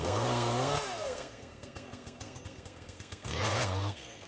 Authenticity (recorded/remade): remade